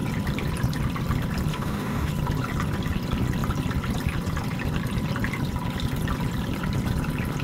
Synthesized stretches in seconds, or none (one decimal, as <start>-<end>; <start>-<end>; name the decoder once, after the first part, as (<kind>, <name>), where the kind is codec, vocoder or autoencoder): 1.5-2.1 (codec, DAC)